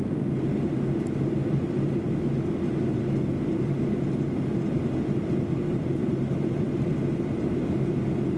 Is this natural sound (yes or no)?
yes